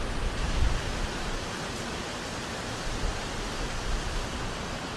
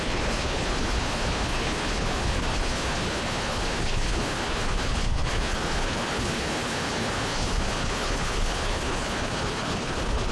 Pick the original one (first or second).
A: first